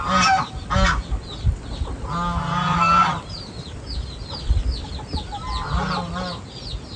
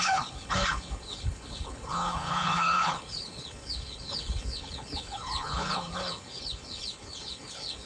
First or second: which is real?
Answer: first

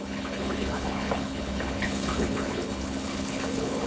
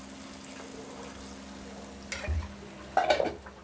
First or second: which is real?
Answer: second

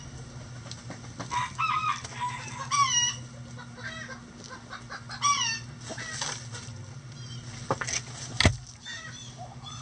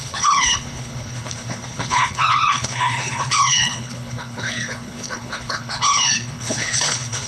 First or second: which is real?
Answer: first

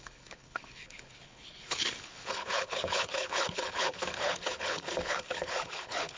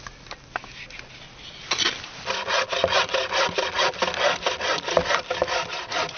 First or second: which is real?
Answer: second